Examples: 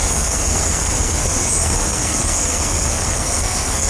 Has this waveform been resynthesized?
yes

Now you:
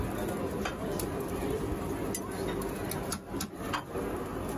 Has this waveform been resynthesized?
no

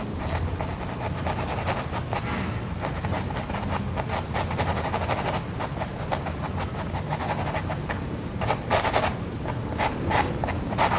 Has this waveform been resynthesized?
no